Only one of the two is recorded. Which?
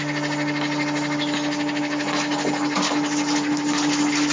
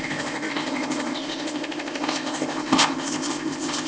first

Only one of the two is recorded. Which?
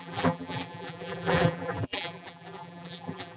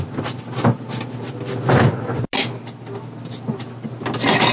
second